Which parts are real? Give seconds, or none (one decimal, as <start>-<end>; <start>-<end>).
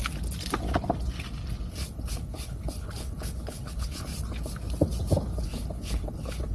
0.0-1.7; 4.1-5.4